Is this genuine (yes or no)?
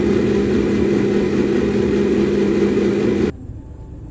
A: yes